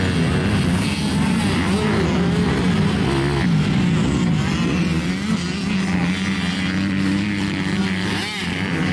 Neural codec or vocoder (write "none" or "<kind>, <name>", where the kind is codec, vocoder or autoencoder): none